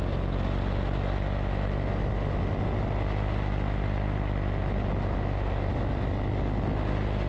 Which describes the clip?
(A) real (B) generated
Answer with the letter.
A